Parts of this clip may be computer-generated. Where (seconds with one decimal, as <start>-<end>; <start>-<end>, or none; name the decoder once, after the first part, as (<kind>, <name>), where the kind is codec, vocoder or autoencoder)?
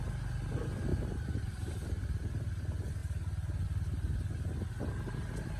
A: 0.9-2.0 (vocoder, BigVGAN v2)